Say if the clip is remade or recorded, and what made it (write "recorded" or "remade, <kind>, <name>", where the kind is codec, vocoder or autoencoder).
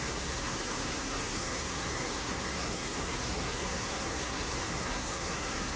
remade, codec, SNAC